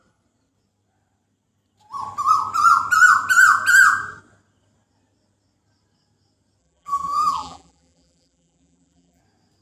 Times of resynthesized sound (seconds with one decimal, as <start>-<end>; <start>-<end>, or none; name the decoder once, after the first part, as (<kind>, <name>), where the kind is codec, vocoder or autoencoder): 6.6-9.2 (vocoder, BigVGAN v2)